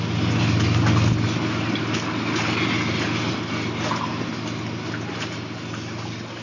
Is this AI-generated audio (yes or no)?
no